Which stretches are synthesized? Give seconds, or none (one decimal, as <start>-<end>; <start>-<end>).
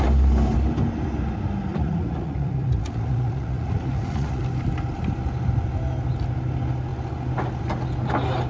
1.7-4.4